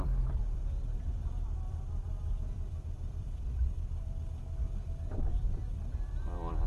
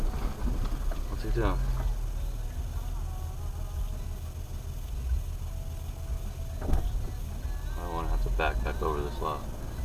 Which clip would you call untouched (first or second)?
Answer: second